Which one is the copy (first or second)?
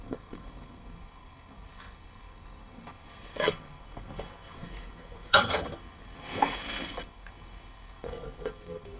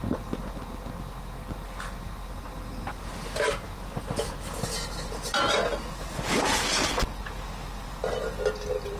first